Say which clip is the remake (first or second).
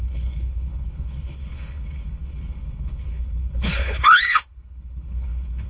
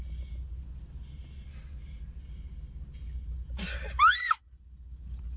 first